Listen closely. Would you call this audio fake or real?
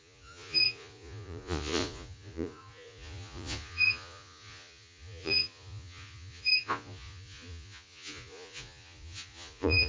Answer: fake